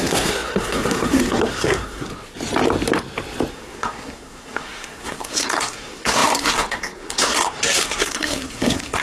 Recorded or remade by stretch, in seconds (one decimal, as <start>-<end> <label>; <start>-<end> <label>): 0.0-2.1 remade; 2.1-3.5 recorded; 3.5-9.0 remade